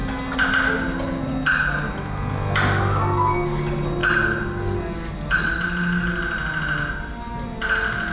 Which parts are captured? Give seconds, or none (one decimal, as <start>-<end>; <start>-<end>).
0.0-8.1